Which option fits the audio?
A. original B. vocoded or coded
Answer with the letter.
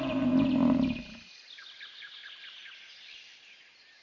A